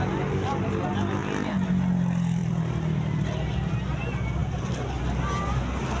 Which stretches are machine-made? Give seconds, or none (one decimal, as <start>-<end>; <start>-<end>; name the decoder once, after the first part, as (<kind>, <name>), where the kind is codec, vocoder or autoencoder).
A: 2.4-3.7 (vocoder, BigVGAN v2); 4.4-5.0